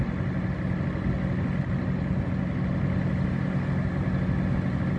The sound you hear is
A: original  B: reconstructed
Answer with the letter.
A